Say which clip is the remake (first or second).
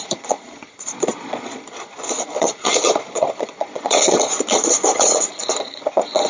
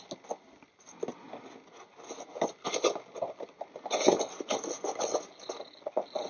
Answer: first